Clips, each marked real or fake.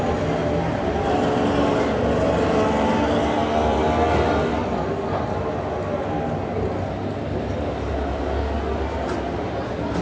real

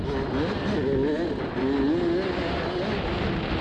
real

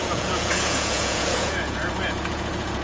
fake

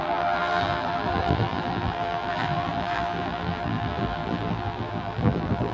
fake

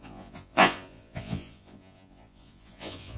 fake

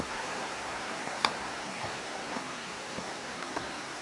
fake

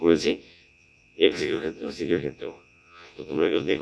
fake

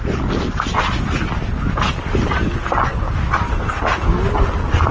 real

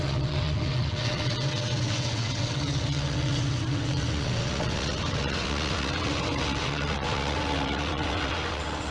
fake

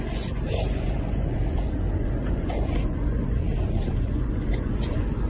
fake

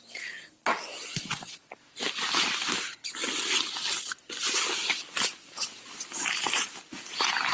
real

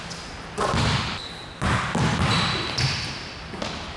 real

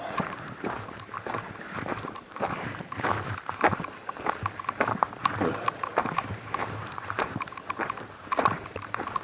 fake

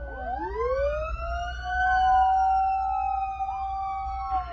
real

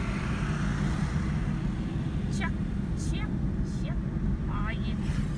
real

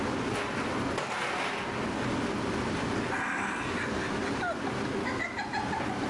real